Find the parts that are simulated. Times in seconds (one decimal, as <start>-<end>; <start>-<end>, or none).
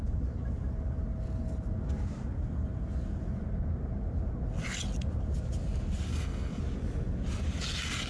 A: 6.1-6.6